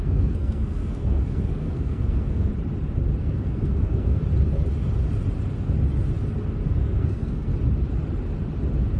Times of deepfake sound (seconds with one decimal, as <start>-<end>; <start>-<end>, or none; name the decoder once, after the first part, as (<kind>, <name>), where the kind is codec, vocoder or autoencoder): 0.0-2.5 (codec, SNAC); 3.2-4.2; 6.8-7.5